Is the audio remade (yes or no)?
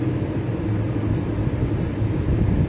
no